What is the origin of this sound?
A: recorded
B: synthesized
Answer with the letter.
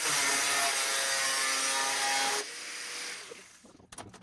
A